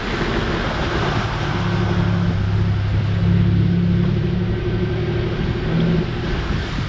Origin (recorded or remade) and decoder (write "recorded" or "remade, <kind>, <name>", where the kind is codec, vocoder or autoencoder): recorded